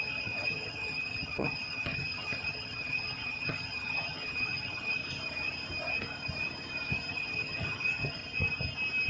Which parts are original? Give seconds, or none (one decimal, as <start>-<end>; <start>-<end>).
5.0-7.1; 8.2-9.1